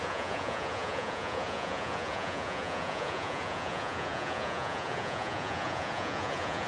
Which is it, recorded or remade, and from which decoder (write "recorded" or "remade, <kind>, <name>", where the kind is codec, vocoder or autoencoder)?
remade, vocoder, Vocos